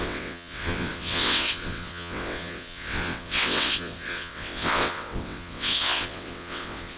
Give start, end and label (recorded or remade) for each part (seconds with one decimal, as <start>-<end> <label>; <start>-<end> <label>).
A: 0.0-7.0 remade